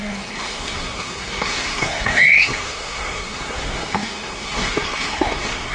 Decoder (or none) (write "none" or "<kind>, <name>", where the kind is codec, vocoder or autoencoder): codec, SNAC